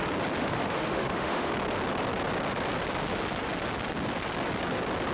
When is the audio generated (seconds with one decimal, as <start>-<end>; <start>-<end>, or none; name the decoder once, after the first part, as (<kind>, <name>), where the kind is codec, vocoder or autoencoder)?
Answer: 0.4-1.5 (autoencoder, DAC-VAE)